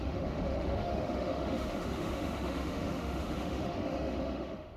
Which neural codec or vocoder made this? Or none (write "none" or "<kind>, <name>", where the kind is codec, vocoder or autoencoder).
autoencoder, DAC-VAE